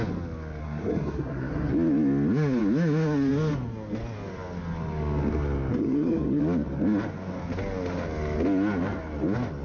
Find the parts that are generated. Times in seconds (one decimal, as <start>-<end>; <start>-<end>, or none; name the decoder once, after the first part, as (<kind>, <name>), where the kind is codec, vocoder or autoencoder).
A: 0.6-1.7 (codec, SNAC); 5.7-6.4